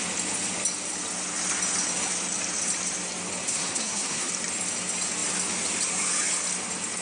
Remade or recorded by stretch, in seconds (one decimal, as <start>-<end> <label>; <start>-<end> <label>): 0.0-3.4 recorded; 3.4-4.3 remade; 4.3-7.0 recorded